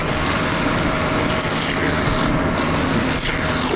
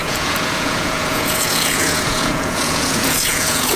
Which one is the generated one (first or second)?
second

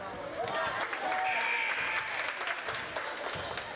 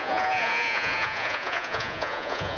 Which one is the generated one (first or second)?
second